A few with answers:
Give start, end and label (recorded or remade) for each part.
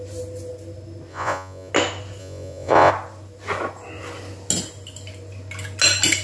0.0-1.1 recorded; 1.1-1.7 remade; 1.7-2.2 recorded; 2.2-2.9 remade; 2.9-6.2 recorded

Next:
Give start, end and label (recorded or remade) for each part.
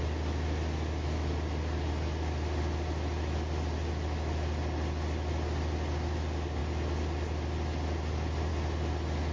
0.0-9.3 recorded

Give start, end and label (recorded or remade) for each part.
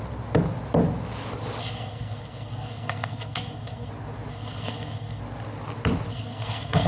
0.0-1.6 recorded; 1.6-3.9 remade; 3.9-4.3 recorded; 4.3-5.2 remade; 5.2-6.1 recorded; 6.1-6.9 remade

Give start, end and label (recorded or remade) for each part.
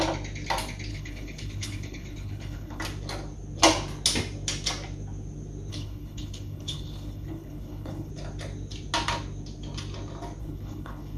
0.0-0.9 recorded; 0.9-2.8 remade; 2.8-5.7 recorded; 5.7-8.1 remade; 8.1-10.4 recorded; 10.4-11.2 remade